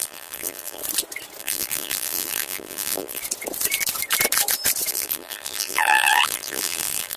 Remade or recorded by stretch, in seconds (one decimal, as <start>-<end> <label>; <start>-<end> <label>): 0.0-0.8 remade; 0.8-1.4 recorded; 1.4-3.2 remade; 3.2-4.9 recorded; 4.9-7.2 remade